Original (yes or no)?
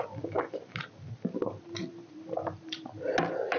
yes